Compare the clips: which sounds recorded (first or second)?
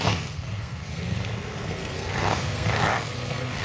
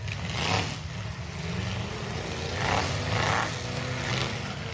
second